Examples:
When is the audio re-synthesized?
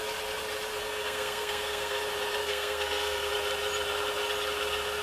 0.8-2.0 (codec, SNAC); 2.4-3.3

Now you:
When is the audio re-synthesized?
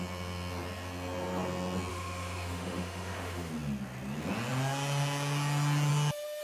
1.9-3.5 (autoencoder, DAC-VAE)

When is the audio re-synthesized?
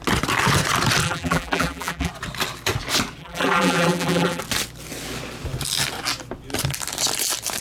1.0-2.1 (vocoder, BigVGAN v2); 3.2-4.4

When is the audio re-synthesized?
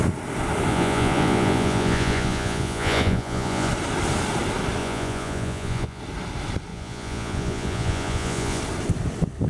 0.7-3.7 (vocoder, Vocos); 4.8-6.0; 6.7-8.6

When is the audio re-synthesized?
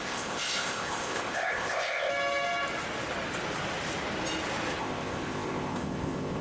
0.0-2.1 (codec, ZipCodec); 4.8-6.4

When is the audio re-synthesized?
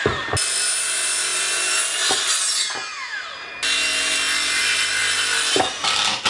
none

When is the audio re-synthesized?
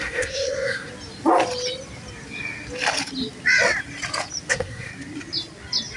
0.0-0.9 (codec, SNAC); 4.5-4.9